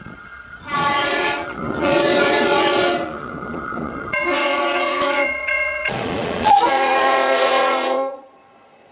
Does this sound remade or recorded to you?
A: remade